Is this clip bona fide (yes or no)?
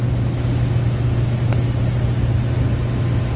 yes